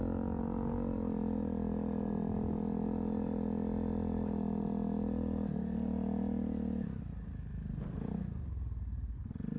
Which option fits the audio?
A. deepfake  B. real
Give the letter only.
B